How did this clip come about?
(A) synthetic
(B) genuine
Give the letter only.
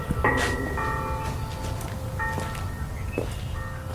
B